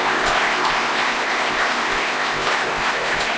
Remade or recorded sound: remade